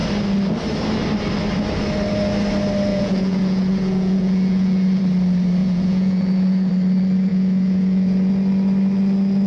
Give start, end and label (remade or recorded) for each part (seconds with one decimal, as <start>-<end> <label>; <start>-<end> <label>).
0.0-2.9 recorded; 2.9-5.0 remade; 5.0-5.6 recorded; 5.6-6.7 remade; 6.7-7.3 recorded; 7.3-8.3 remade; 8.3-9.5 recorded